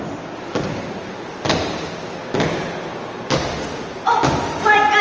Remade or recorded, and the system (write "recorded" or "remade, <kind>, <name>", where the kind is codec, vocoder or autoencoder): recorded